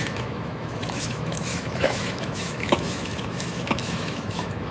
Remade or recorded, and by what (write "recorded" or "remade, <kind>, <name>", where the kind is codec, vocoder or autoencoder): remade, autoencoder, DAC-VAE